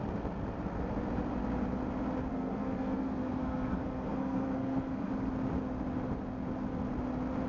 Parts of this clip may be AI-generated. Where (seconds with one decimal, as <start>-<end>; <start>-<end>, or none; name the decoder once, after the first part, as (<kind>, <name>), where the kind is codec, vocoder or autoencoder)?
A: 2.3-5.1 (codec, SNAC)

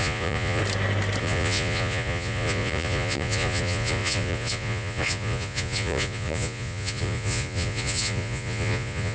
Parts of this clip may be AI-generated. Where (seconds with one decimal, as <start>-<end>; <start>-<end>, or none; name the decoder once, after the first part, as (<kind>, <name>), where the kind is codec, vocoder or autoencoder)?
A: 0.0-0.6 (vocoder, Vocos); 1.2-9.1